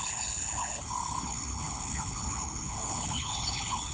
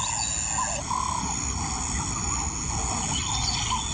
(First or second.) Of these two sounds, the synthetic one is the first